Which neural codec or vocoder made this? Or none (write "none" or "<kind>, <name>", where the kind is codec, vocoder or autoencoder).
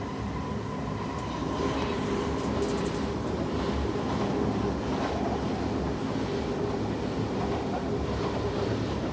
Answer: none